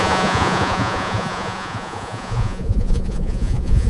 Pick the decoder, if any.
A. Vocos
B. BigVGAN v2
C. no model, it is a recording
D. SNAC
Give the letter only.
A